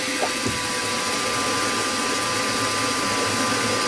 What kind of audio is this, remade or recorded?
recorded